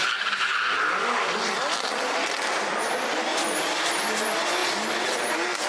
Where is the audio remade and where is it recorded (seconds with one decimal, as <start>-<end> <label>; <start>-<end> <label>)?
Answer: 0.0-0.5 recorded; 0.5-1.6 remade; 1.6-3.3 recorded; 3.3-4.0 remade; 4.0-5.7 recorded